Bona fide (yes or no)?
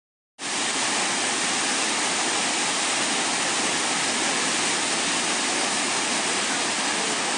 yes